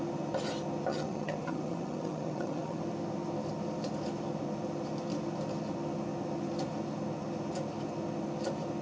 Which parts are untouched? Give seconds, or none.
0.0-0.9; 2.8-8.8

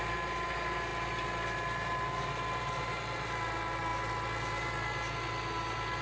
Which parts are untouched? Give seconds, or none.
0.0-6.0

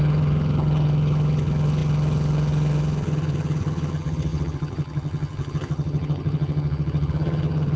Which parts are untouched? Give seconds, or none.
none

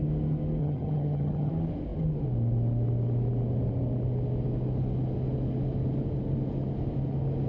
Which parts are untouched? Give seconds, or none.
0.0-0.6; 1.5-7.5

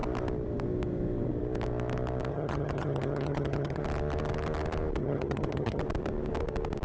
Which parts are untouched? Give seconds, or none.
0.0-2.3; 3.8-5.0; 5.8-6.8

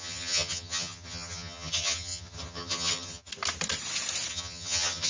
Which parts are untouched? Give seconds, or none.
3.3-4.3

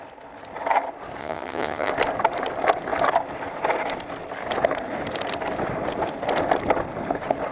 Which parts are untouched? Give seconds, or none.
0.0-1.2; 1.9-7.5